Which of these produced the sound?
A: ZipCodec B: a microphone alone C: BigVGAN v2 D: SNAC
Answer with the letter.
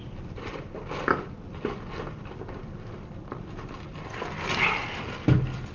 B